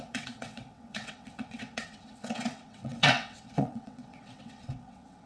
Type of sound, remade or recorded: remade